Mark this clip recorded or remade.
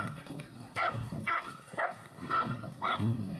remade